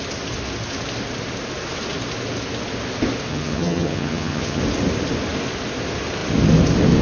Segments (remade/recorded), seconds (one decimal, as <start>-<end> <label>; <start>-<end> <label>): 0.0-3.3 recorded; 3.3-4.6 remade; 4.6-7.0 recorded